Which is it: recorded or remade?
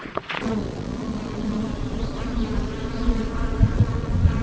remade